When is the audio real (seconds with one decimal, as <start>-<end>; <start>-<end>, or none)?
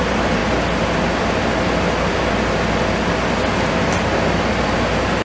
0.0-5.2